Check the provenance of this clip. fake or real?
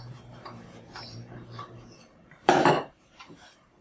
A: fake